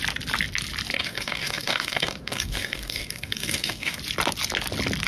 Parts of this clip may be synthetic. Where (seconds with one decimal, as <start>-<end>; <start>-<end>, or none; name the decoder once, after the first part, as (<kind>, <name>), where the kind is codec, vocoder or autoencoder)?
0.9-4.0 (codec, DAC)